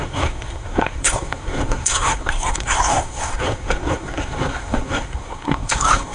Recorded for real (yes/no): no